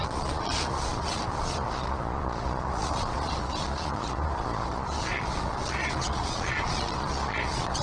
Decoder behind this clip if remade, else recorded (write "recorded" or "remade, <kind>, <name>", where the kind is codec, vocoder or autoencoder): remade, vocoder, Vocos